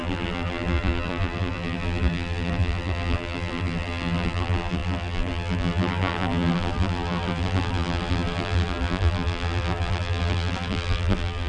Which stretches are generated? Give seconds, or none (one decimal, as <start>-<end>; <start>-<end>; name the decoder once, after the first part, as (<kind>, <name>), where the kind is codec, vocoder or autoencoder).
0.0-11.5 (vocoder, BigVGAN v2)